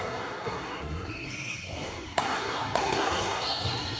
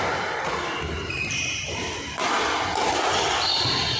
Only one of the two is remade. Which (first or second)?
first